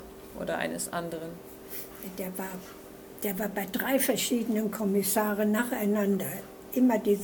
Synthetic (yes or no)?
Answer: no